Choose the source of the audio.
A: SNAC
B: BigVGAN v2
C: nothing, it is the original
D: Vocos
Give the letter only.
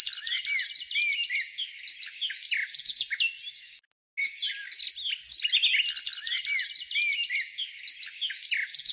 C